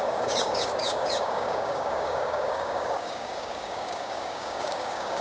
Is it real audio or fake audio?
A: fake